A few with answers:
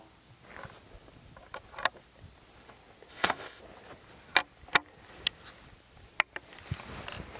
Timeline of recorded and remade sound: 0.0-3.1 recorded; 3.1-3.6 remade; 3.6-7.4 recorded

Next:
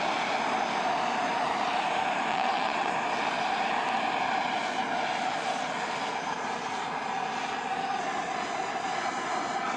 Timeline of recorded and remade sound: 0.0-2.3 recorded; 2.3-2.9 remade; 2.9-9.8 recorded

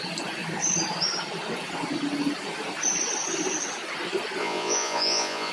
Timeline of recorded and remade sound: 0.0-4.4 recorded; 4.4-5.5 remade

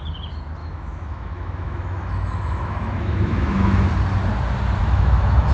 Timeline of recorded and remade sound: 0.0-0.6 recorded; 0.6-3.9 remade; 3.9-4.8 recorded; 4.8-5.5 remade

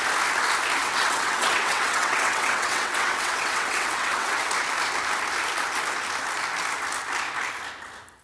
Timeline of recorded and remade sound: 0.0-0.8 recorded; 0.8-4.5 remade; 4.5-8.2 recorded

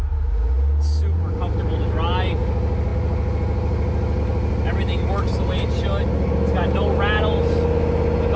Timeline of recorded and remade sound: 0.0-8.4 recorded